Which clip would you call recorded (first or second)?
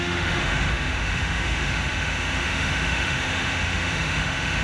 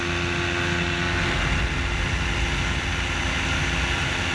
second